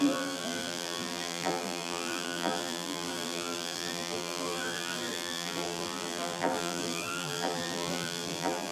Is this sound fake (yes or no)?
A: yes